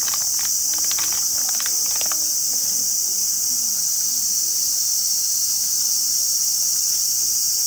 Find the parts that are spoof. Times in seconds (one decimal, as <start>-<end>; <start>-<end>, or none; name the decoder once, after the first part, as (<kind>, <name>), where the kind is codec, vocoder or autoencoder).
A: none